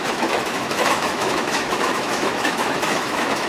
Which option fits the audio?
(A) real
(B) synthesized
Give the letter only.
B